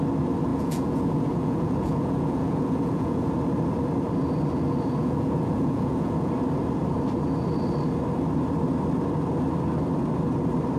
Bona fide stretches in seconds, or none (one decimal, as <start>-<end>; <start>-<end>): 0.0-0.5; 3.3-5.0; 6.3-10.8